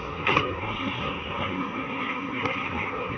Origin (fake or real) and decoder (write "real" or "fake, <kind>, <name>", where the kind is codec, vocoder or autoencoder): fake, codec, SNAC